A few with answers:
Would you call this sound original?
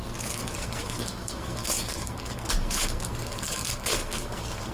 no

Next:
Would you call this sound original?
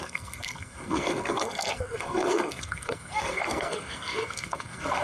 no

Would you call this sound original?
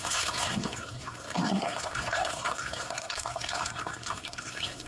no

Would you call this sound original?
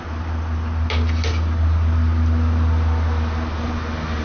yes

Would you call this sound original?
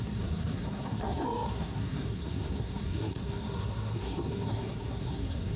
no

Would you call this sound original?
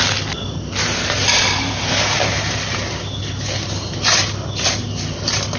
yes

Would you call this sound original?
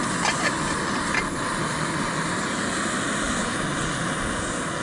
yes